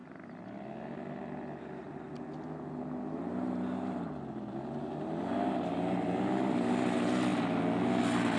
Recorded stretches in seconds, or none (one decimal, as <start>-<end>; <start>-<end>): 0.0-8.4